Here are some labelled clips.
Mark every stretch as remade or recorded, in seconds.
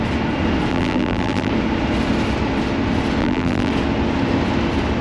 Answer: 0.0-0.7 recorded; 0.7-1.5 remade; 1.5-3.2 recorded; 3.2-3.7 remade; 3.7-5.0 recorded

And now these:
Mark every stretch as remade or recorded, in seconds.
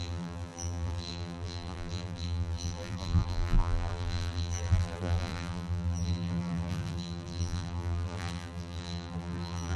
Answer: 0.0-9.8 remade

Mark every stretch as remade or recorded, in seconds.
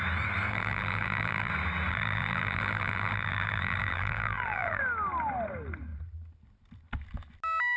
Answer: 0.0-0.5 recorded; 0.5-1.5 remade; 1.5-1.9 recorded; 1.9-4.8 remade; 4.8-7.8 recorded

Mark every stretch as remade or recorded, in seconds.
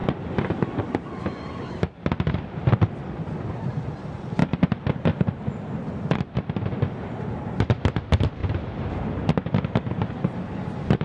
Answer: 0.0-11.0 recorded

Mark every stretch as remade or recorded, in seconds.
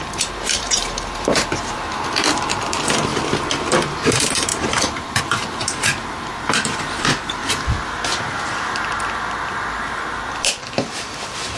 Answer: 0.0-3.1 remade; 3.1-3.7 recorded; 3.7-7.4 remade; 7.4-10.7 recorded; 10.7-11.6 remade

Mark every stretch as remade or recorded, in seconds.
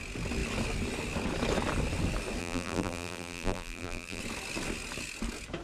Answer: 0.0-2.4 recorded; 2.4-4.2 remade; 4.2-5.6 recorded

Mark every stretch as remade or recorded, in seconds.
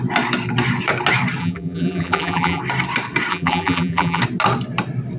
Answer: 0.0-1.4 recorded; 1.4-2.6 remade; 2.6-3.3 recorded; 3.3-4.2 remade; 4.2-5.2 recorded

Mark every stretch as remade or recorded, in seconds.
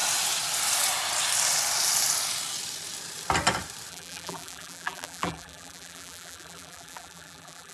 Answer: 0.0-3.9 recorded; 3.9-7.7 remade